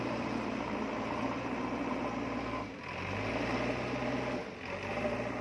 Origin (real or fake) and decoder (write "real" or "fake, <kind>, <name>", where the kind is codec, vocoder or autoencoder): real